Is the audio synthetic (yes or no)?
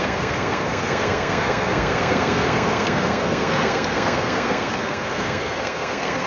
yes